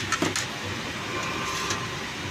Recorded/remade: recorded